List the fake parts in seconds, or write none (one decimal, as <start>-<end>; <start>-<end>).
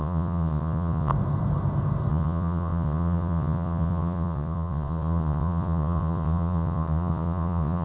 0.0-1.1; 2.1-7.8